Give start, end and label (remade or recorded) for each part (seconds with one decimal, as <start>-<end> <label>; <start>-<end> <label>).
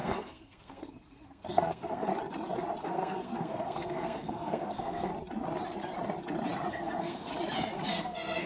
0.0-2.1 remade; 2.1-2.8 recorded; 2.8-5.1 remade; 5.1-6.7 recorded; 6.7-7.3 remade; 7.3-7.9 recorded; 7.9-8.5 remade